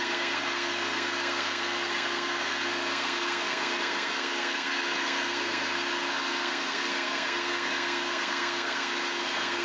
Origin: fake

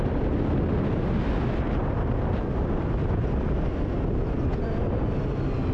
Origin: real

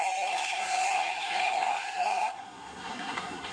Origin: fake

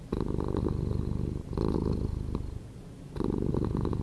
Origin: real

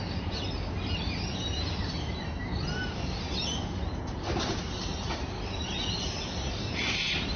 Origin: real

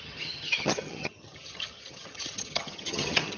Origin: fake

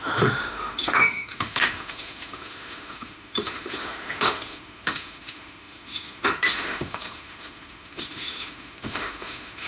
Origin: fake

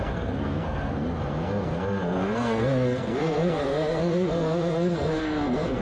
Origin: fake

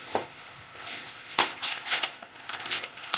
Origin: fake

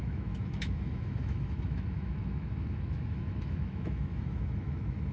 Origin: fake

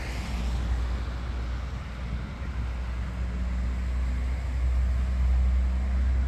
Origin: real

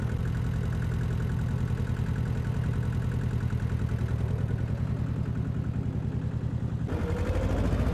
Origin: real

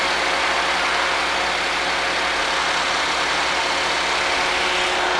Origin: real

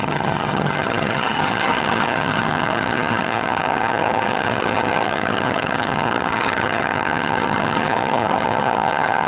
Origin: fake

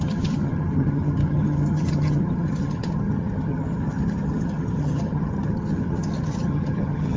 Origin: fake